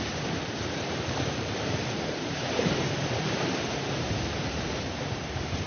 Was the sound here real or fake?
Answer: fake